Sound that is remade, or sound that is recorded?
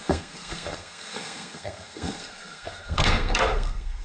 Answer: remade